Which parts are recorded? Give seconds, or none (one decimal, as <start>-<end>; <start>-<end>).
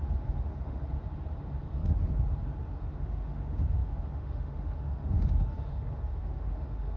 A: 0.8-1.4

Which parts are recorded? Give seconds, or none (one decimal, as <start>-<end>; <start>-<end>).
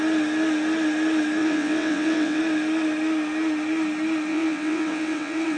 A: 0.0-1.4; 2.4-4.3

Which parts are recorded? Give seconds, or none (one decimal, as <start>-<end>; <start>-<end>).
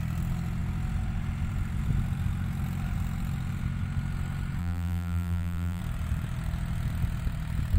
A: 0.0-4.6; 5.8-7.8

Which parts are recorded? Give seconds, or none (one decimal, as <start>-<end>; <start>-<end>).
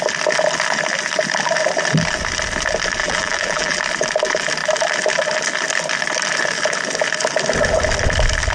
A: 0.0-3.0; 3.8-8.5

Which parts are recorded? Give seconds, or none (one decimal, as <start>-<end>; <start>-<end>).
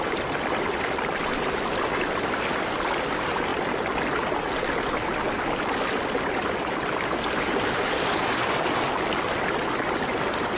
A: 0.0-10.6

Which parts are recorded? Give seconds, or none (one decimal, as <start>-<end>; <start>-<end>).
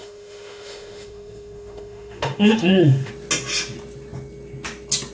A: 3.1-5.1